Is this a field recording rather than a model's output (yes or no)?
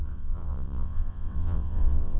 no